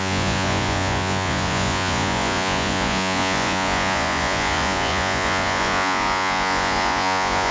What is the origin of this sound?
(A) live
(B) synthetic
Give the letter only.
B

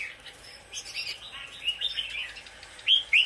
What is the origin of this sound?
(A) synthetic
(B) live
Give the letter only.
B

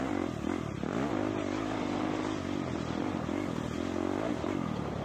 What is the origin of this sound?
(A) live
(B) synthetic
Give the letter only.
A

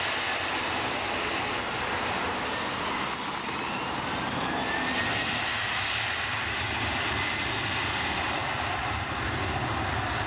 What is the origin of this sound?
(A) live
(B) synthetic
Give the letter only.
A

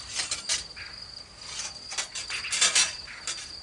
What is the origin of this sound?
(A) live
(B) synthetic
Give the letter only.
A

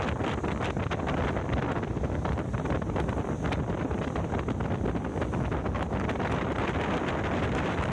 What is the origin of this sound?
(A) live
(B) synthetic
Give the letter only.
A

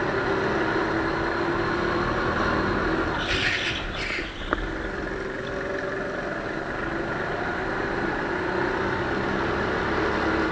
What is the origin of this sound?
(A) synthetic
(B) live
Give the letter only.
B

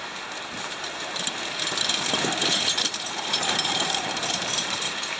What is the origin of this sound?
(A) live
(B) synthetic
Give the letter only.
B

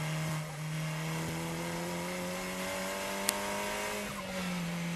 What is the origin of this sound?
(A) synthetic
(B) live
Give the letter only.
B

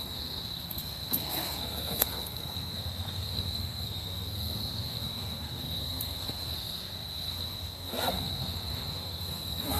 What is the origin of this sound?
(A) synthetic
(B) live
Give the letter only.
A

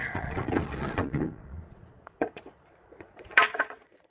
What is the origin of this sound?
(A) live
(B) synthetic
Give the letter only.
B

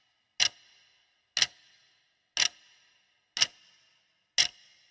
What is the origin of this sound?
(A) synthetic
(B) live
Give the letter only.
B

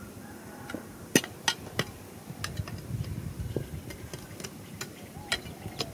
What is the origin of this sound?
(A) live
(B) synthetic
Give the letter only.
A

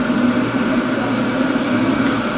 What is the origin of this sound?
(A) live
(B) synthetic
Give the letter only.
A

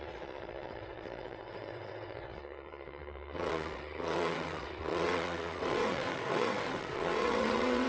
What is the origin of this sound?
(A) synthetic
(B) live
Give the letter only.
A